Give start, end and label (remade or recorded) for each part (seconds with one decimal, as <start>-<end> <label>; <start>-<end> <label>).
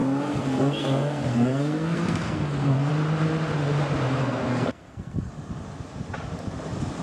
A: 0.0-2.9 remade; 2.9-4.2 recorded; 4.2-5.3 remade; 5.3-7.0 recorded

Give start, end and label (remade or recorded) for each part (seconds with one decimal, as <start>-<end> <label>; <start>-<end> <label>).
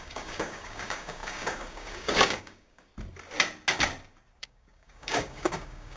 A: 0.0-2.9 remade; 2.9-4.4 recorded; 4.4-6.0 remade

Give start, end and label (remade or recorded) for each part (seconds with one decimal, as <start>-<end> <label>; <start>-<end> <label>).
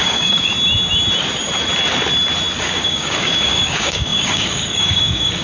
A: 0.0-0.5 remade; 0.5-2.6 recorded; 2.6-5.4 remade